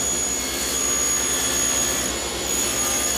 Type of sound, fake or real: real